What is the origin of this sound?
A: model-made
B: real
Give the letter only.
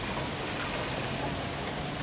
B